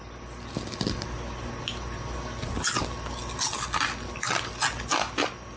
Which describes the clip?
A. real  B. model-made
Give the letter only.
A